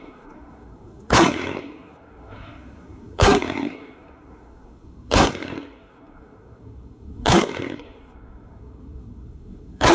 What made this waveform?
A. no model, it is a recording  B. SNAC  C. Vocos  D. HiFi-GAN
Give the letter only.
B